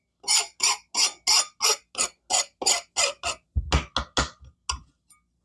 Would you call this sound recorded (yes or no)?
yes